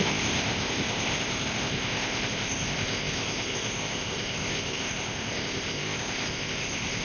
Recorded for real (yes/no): no